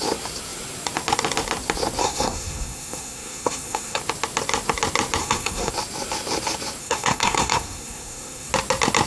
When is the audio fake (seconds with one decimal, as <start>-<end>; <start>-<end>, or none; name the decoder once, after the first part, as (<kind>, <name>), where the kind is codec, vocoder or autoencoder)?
2.0-4.0 (codec, SNAC); 5.2-5.7; 6.8-8.5